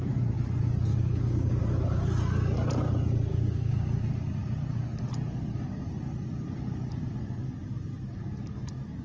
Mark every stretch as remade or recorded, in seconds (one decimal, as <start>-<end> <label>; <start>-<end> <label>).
0.0-0.9 recorded; 0.9-1.6 remade; 1.6-3.3 recorded; 3.3-4.0 remade; 4.0-9.0 recorded